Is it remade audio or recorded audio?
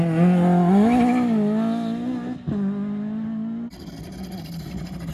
recorded